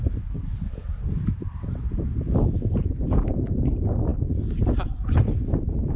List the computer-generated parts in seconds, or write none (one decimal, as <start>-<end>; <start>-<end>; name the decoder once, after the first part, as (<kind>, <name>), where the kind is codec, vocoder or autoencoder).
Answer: 0.0-6.0 (vocoder, BigVGAN v2)